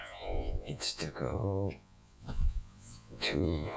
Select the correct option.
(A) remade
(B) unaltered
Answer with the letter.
A